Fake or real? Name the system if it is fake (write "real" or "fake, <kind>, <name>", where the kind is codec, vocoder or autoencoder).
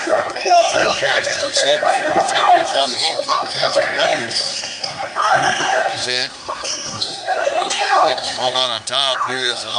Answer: fake, codec, SNAC